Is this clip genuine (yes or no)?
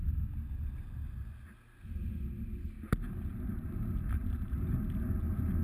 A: yes